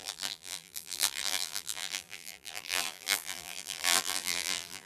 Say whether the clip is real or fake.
fake